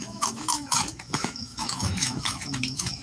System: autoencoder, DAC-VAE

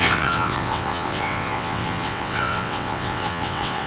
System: vocoder, WaveNeXt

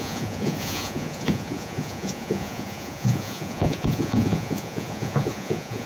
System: vocoder, Vocos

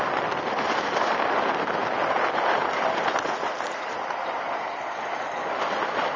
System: none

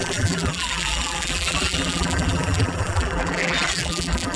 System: vocoder, BigVGAN v2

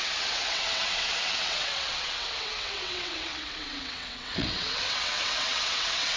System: vocoder, WaveNeXt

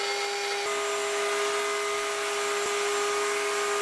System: none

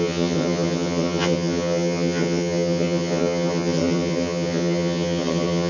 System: vocoder, HiFi-GAN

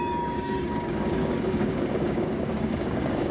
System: codec, DAC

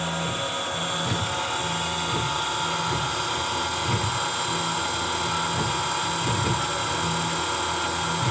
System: none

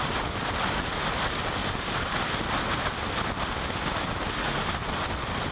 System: none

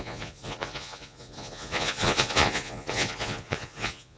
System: vocoder, Vocos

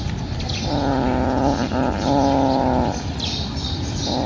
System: none